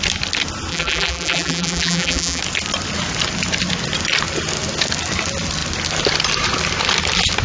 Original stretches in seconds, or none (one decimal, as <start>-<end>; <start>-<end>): 0.0-0.7; 2.4-7.4